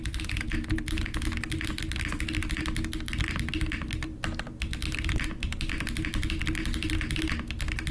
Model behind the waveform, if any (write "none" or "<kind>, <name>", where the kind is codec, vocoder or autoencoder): none